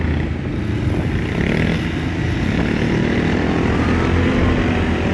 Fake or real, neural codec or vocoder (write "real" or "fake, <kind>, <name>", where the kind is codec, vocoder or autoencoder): real